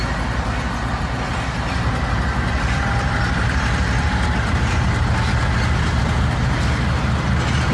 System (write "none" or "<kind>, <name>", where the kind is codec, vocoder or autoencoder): none